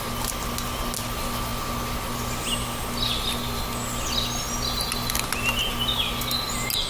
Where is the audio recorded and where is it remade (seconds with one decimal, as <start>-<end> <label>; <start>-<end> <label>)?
0.0-6.9 recorded